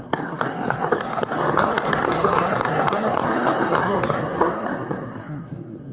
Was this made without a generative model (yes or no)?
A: no